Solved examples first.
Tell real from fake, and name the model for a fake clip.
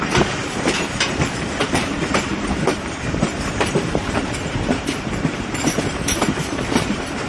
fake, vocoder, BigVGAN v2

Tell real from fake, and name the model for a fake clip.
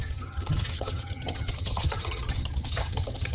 fake, vocoder, HiFi-GAN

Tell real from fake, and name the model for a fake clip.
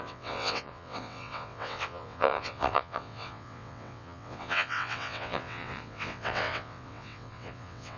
fake, vocoder, WaveNeXt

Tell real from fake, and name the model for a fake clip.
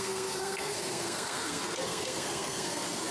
fake, codec, SNAC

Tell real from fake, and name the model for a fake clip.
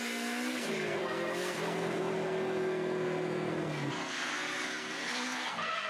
fake, codec, SNAC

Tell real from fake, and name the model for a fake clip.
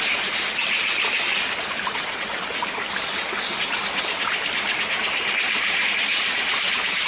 real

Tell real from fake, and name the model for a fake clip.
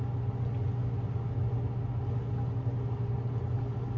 real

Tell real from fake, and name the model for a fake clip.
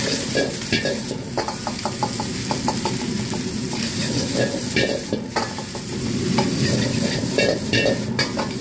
real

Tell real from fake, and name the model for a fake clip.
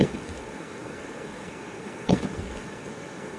fake, codec, SNAC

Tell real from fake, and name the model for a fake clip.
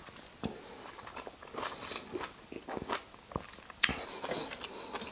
real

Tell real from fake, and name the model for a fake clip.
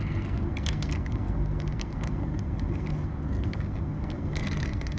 fake, codec, SNAC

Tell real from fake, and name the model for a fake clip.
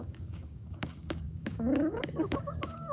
fake, codec, DAC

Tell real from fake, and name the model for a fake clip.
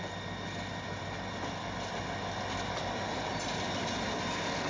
real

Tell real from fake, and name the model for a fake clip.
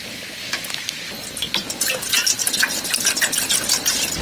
real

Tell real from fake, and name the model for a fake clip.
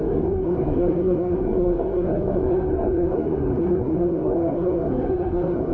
fake, codec, SNAC